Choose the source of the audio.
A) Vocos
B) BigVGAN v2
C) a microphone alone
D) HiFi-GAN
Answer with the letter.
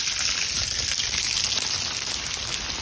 C